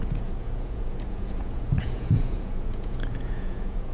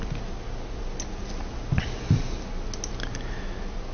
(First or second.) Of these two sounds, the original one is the second